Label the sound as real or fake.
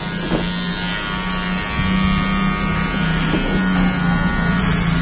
real